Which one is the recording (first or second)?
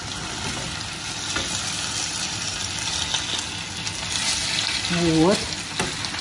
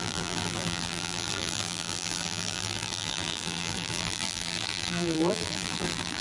first